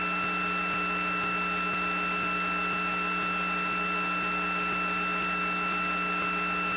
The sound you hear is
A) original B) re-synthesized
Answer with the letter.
A